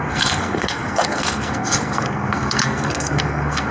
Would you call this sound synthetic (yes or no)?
yes